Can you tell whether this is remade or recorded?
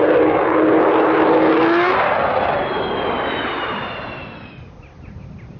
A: recorded